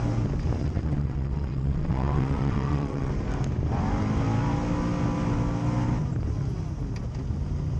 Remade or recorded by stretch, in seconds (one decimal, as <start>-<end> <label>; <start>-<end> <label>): 0.0-0.6 recorded; 0.6-3.1 remade; 3.1-7.8 recorded